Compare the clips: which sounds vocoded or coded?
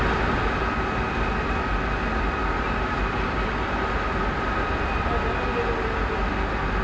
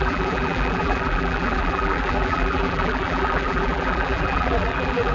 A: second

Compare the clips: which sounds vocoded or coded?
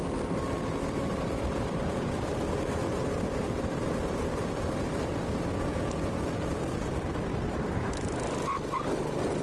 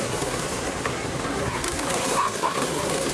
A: second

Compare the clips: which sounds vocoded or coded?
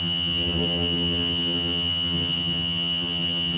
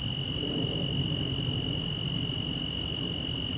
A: first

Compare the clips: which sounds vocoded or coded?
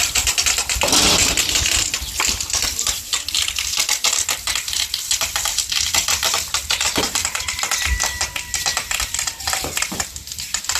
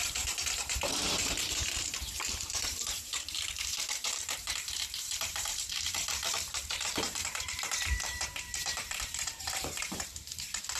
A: second